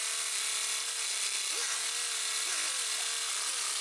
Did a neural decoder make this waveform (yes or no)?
no